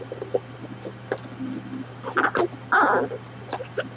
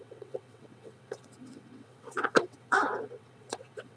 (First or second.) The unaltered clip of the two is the first